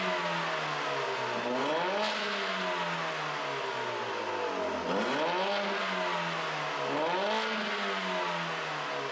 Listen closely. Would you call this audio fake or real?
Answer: real